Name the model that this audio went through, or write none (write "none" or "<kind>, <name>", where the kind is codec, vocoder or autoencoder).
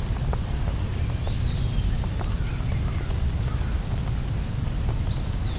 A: none